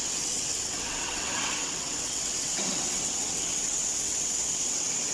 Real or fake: fake